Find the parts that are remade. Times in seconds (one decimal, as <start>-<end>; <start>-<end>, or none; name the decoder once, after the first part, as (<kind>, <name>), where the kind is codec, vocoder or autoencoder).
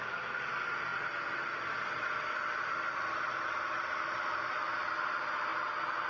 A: 0.9-4.6 (vocoder, BigVGAN v2)